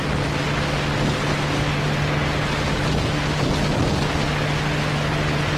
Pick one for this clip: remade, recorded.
recorded